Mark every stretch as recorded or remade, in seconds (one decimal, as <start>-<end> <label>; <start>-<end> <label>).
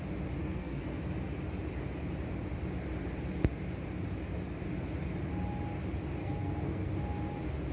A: 0.0-0.4 recorded; 0.4-1.0 remade; 1.0-6.2 recorded; 6.2-6.9 remade; 6.9-7.7 recorded